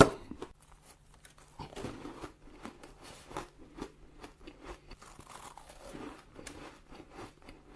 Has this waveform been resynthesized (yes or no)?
no